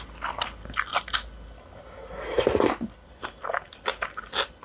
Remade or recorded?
recorded